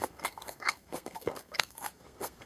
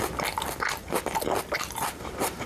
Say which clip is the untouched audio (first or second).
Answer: second